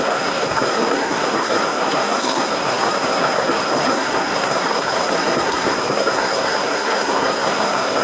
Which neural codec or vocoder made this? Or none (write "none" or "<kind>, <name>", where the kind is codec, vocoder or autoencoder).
codec, SNAC